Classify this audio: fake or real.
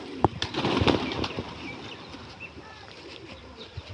fake